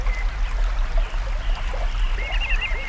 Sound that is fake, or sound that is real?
real